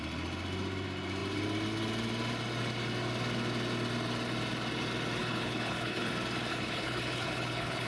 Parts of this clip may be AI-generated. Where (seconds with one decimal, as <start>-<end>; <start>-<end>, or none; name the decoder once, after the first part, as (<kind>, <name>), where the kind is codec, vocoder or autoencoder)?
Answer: 5.2-6.1 (codec, HILCodec); 6.5-7.9